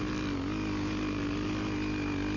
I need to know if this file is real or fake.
real